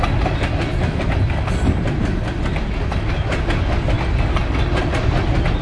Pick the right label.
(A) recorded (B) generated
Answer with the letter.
A